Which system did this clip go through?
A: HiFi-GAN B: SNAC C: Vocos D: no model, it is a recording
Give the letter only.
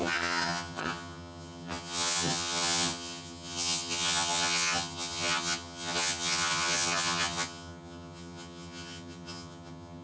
A